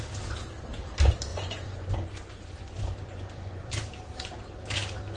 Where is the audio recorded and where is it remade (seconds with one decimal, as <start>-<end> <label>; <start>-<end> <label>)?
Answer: 0.0-1.3 recorded; 1.3-3.7 remade; 3.7-5.2 recorded